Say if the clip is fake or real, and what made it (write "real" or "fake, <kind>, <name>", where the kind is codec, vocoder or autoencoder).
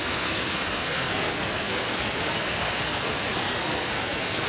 fake, codec, SNAC